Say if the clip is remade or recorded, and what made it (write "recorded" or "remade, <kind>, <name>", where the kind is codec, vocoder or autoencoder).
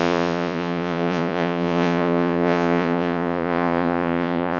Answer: remade, vocoder, Vocos